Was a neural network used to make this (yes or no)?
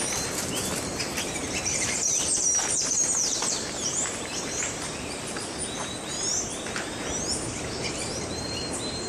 yes